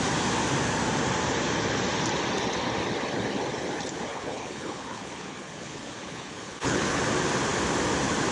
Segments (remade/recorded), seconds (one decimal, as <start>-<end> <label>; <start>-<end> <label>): 0.0-4.1 recorded; 4.1-7.0 remade; 7.0-8.3 recorded